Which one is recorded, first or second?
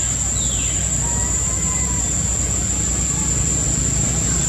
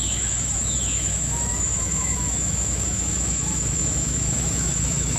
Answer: first